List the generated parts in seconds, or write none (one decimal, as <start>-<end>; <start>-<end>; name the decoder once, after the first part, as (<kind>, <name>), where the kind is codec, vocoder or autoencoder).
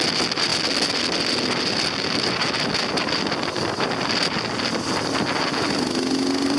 none